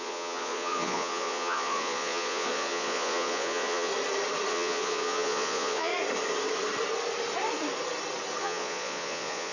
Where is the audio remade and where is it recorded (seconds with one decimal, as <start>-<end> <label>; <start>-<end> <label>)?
0.0-3.9 remade; 3.9-4.5 recorded; 4.5-5.9 remade; 5.9-8.4 recorded; 8.4-9.5 remade